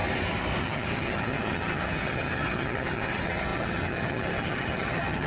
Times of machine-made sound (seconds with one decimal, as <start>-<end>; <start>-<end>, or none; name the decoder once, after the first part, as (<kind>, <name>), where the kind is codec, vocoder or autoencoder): 0.6-5.3 (vocoder, HiFi-GAN)